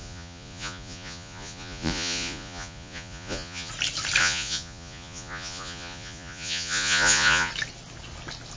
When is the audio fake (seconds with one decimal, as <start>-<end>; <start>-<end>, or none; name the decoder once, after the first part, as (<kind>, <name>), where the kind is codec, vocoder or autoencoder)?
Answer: 0.0-3.7 (vocoder, Vocos); 4.2-7.5